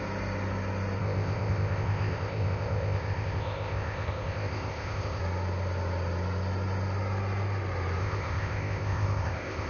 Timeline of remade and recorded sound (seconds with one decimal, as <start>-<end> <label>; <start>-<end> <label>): 0.0-1.0 recorded; 1.0-5.2 remade; 5.2-8.0 recorded; 8.0-9.7 remade